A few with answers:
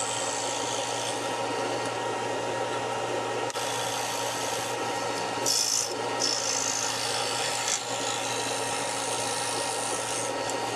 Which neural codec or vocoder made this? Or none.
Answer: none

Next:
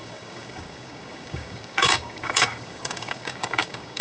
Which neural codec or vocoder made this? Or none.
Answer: codec, DAC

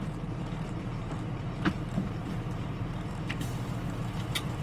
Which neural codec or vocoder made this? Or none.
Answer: vocoder, BigVGAN v2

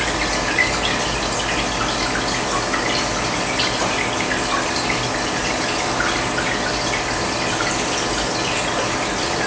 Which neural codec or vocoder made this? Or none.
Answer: none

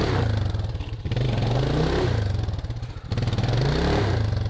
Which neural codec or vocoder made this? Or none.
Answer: none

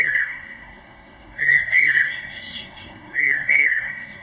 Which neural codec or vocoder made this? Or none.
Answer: codec, SNAC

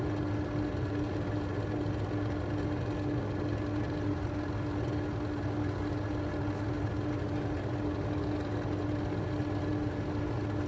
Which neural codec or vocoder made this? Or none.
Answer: none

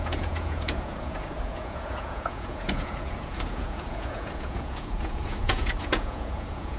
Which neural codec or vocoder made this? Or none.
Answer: vocoder, Vocos